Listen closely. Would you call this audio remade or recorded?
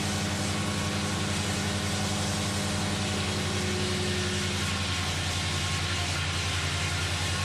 recorded